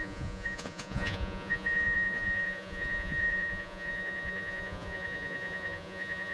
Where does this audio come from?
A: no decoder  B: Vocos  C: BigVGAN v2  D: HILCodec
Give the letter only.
B